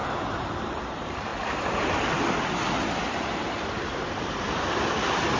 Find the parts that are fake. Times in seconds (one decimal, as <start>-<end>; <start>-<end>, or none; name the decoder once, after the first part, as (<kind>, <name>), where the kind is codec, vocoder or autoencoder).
0.7-1.3 (vocoder, BigVGAN v2); 3.1-5.4